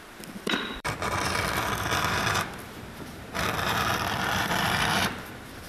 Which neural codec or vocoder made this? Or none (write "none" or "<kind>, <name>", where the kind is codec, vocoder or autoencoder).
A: vocoder, BigVGAN v2